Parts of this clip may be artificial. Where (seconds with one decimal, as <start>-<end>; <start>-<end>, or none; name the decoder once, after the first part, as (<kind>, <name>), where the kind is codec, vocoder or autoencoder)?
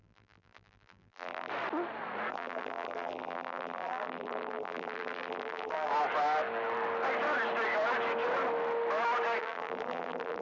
0.0-1.5 (vocoder, BigVGAN v2); 2.3-5.9; 9.4-10.4